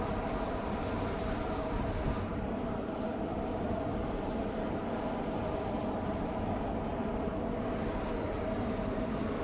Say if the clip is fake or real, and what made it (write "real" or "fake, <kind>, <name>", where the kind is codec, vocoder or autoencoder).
fake, vocoder, BigVGAN v2